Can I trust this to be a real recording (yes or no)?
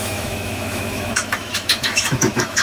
no